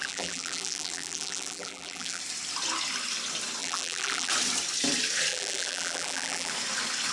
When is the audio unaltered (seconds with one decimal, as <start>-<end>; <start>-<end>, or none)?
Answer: 2.2-3.6; 4.3-5.3; 6.5-7.1